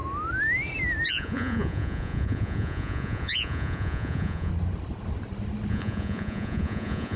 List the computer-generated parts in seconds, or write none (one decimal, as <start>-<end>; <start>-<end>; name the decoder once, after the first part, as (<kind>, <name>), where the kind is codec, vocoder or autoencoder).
1.1-4.5 (vocoder, Vocos); 5.7-7.2